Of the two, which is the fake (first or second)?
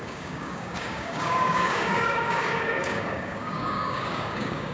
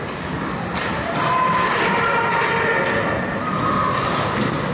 first